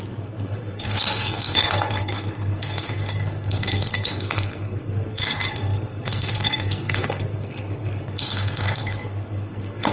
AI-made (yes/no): yes